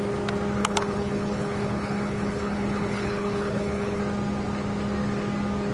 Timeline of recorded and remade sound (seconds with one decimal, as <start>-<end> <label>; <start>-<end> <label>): 0.0-0.6 recorded; 0.6-4.0 remade; 4.0-5.7 recorded